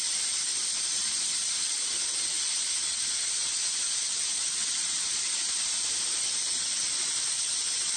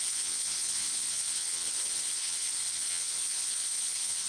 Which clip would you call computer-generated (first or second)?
second